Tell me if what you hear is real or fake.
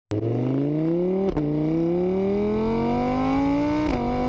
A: real